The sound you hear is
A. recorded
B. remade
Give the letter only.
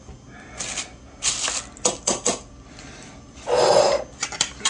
A